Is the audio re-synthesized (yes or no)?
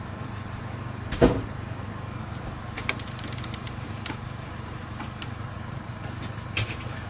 yes